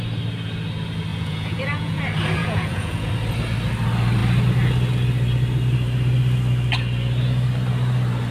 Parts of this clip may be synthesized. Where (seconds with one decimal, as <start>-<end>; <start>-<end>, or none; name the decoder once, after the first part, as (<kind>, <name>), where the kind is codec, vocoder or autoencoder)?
1.1-2.0 (vocoder, Vocos); 2.4-3.1